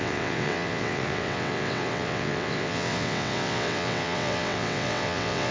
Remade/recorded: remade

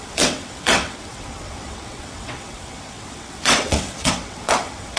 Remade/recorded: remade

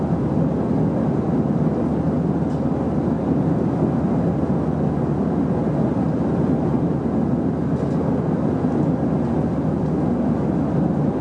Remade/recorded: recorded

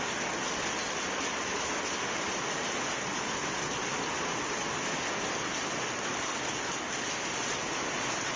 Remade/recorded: recorded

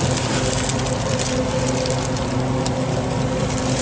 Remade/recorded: recorded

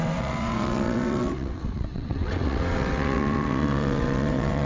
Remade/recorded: remade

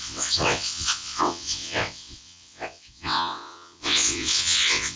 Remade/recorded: remade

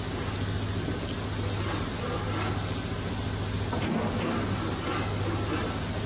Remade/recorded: recorded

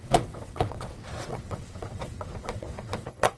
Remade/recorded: remade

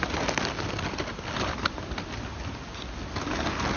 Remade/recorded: recorded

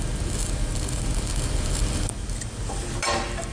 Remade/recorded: recorded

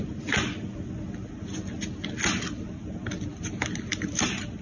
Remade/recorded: recorded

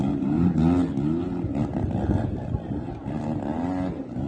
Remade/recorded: recorded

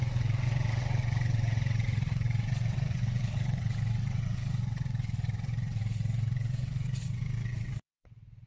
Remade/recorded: remade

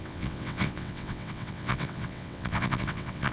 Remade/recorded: remade